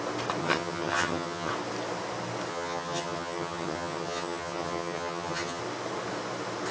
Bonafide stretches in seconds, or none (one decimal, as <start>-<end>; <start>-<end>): 0.0-0.4; 1.5-2.5; 5.6-6.7

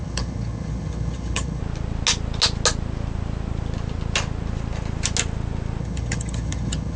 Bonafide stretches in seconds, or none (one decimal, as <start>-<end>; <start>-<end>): 1.6-5.8